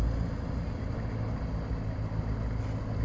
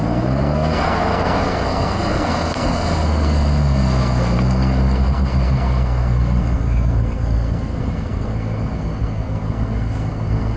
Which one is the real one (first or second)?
first